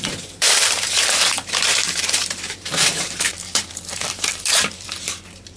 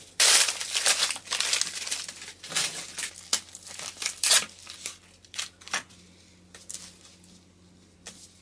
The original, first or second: second